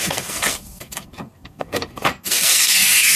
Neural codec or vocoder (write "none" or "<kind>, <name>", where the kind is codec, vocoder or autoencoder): codec, SNAC